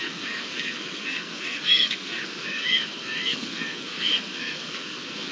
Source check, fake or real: fake